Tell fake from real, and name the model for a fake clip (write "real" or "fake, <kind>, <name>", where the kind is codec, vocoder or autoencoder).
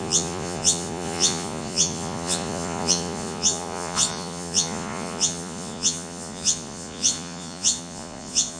fake, vocoder, Vocos